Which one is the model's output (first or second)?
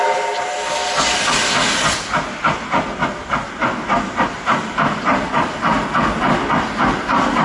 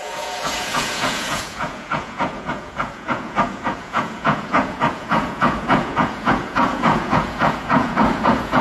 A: second